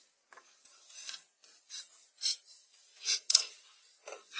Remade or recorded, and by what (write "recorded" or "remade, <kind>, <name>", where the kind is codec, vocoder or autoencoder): remade, vocoder, Vocos